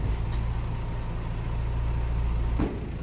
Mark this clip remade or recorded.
recorded